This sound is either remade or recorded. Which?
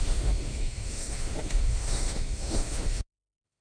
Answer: remade